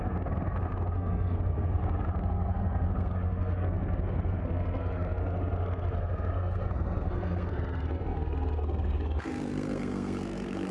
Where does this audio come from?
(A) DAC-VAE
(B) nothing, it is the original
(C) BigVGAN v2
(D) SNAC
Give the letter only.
D